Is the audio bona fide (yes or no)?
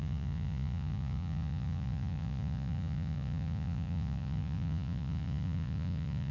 no